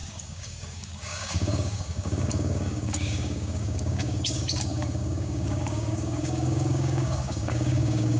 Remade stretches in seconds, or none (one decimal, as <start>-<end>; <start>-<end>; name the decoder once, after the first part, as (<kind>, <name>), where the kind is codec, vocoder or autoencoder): 0.0-8.2 (codec, DAC)